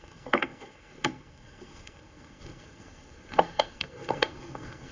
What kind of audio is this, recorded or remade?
remade